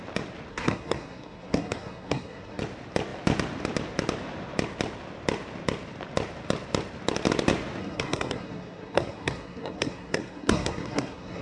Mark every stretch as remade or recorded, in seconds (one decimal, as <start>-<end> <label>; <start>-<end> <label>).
0.0-0.5 recorded; 0.5-2.6 remade; 2.6-7.8 recorded; 7.8-11.4 remade